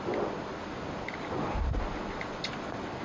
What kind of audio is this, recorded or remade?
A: recorded